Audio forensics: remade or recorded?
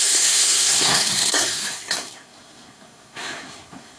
remade